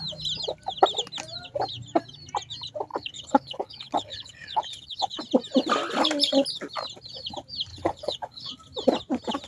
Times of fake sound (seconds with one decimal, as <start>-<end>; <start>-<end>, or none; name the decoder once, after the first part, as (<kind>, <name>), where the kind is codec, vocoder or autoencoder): 2.9-5.2 (codec, HILCodec); 7.7-8.5